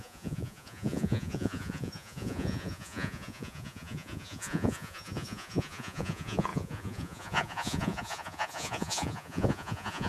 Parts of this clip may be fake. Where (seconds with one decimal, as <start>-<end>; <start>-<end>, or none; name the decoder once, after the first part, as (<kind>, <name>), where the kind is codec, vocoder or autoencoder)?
0.0-10.1 (vocoder, Vocos)